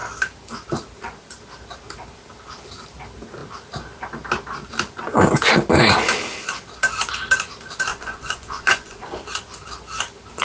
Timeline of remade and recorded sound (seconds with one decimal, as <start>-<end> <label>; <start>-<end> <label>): 0.0-7.9 recorded; 7.9-9.2 remade; 9.2-10.4 recorded